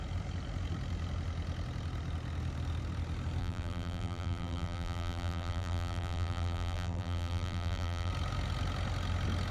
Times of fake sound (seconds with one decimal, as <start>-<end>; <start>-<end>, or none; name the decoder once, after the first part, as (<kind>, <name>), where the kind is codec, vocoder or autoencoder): 3.4-8.1 (vocoder, BigVGAN v2)